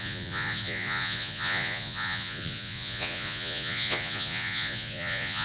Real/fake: fake